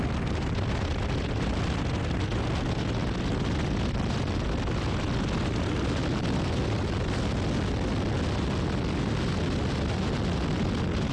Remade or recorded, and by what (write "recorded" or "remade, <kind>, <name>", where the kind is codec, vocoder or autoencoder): recorded